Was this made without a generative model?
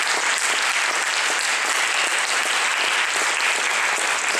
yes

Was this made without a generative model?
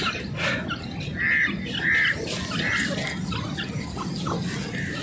yes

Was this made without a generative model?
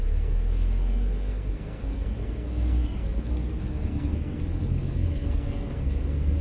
no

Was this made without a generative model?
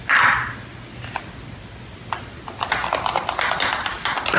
yes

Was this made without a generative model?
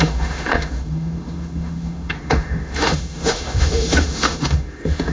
no